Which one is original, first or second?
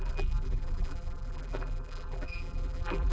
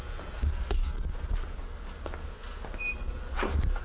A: second